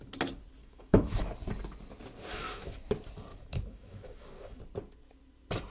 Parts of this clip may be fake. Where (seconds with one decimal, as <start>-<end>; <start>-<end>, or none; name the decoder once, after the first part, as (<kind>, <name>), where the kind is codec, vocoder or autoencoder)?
0.6-1.3 (autoencoder, DAC-VAE); 2.3-2.9; 3.3-4.6